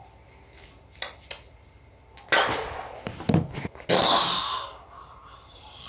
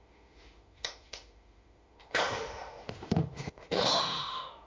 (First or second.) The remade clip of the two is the second